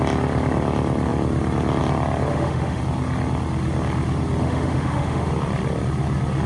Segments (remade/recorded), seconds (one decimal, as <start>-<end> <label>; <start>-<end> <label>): 0.0-2.3 recorded; 2.3-2.8 remade; 2.8-4.4 recorded; 4.4-5.3 remade; 5.3-6.5 recorded